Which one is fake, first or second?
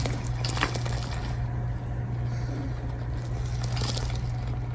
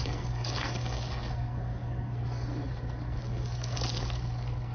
second